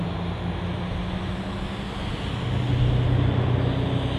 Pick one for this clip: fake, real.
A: real